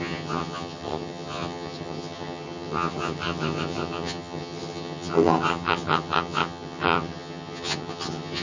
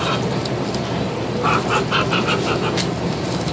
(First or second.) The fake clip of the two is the first